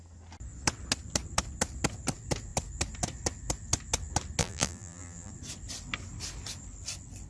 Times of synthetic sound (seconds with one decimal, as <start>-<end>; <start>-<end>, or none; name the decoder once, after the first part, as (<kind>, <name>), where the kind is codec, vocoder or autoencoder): 4.4-5.3 (vocoder, BigVGAN v2)

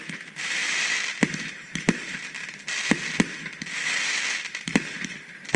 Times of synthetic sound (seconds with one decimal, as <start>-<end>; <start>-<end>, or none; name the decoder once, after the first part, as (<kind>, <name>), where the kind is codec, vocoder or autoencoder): none

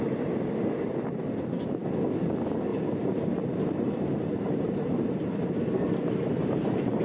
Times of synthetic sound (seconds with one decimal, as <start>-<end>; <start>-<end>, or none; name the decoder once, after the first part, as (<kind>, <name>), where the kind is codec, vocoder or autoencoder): 2.7-7.0 (vocoder, BigVGAN v2)

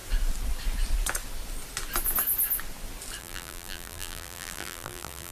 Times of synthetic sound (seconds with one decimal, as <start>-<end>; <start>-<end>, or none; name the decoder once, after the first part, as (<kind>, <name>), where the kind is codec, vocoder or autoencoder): 3.2-5.3 (vocoder, BigVGAN v2)